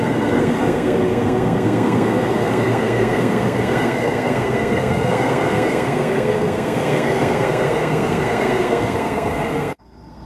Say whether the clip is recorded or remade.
remade